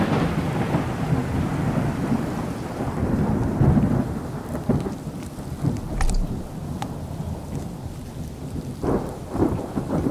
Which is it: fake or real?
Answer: real